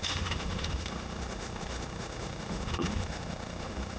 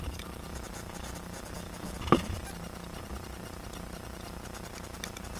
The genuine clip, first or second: second